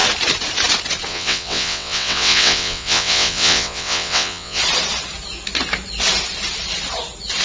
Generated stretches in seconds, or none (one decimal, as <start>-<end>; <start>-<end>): 1.1-4.6